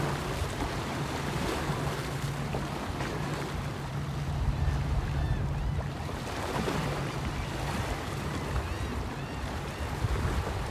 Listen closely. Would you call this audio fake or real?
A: real